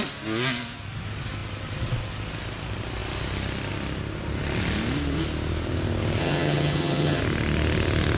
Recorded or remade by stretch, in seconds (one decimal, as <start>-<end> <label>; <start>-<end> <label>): 0.0-6.2 recorded; 6.2-7.2 remade; 7.2-8.2 recorded